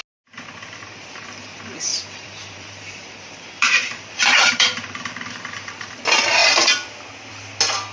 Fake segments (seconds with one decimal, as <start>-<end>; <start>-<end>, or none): 1.9-5.9